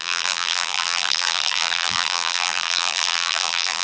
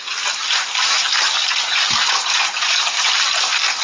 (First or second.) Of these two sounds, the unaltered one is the second